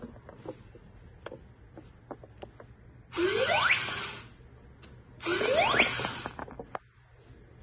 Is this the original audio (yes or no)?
yes